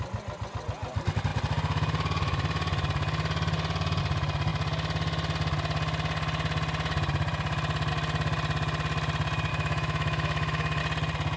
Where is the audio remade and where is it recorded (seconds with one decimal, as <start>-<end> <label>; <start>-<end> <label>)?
0.0-9.5 recorded; 9.5-10.8 remade; 10.8-11.4 recorded